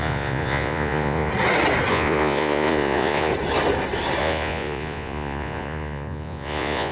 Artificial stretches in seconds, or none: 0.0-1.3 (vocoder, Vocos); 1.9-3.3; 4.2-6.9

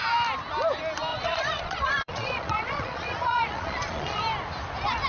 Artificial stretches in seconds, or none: 1.1-4.2 (vocoder, Vocos)

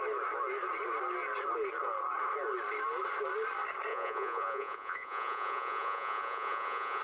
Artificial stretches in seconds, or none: 3.9-7.0 (vocoder, Vocos)